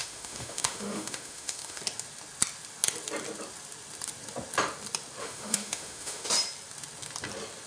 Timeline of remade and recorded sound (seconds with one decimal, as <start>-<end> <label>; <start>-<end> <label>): 0.0-1.8 remade; 1.8-5.2 recorded; 5.2-6.3 remade; 6.3-7.7 recorded